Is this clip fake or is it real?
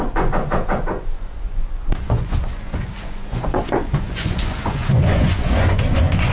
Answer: fake